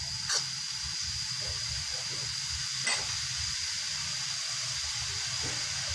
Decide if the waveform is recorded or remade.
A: recorded